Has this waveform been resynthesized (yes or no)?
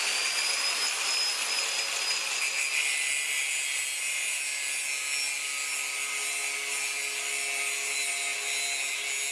no